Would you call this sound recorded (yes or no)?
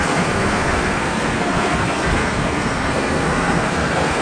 no